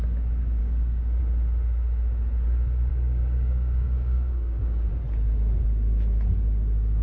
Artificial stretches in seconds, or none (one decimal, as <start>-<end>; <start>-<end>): 0.6-1.2; 2.9-4.9